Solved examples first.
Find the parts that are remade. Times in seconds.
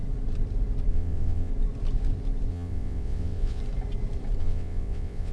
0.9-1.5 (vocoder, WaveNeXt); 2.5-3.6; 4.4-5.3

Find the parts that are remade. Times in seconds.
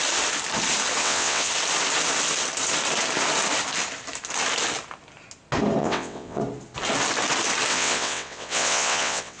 1.0-1.5 (vocoder, WaveNeXt); 5.8-6.4; 7.7-9.4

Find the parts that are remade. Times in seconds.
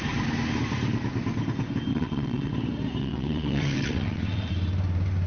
1.9-2.5 (vocoder, WaveNeXt); 3.0-4.5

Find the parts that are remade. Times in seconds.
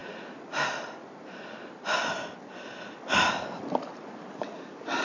none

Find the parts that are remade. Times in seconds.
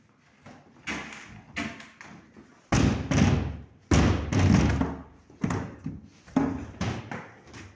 none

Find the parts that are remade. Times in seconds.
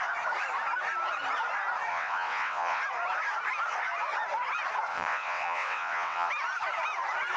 1.9-2.8 (vocoder, WaveNeXt); 4.9-6.3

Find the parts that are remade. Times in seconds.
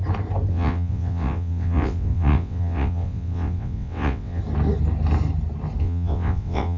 0.5-4.4 (vocoder, WaveNeXt); 5.8-6.8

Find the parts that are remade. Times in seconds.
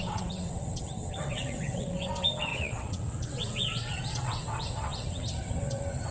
0.0-6.1 (vocoder, WaveNeXt)